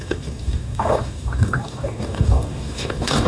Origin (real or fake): fake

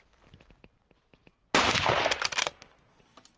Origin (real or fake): real